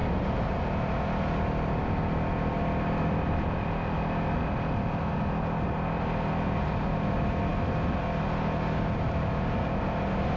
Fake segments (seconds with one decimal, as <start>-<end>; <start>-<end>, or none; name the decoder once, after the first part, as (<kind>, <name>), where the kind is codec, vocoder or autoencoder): none